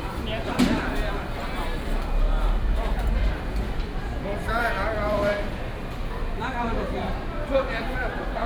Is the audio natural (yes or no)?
no